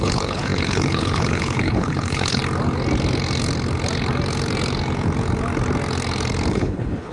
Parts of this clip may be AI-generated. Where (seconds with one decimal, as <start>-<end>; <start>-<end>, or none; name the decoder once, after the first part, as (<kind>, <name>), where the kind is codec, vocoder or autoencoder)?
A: 0.0-2.4 (codec, HILCodec); 6.5-7.1